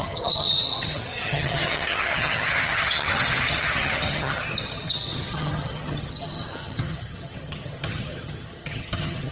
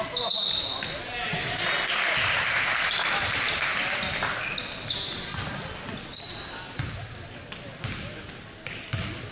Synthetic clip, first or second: first